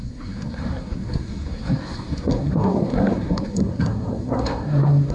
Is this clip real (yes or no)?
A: no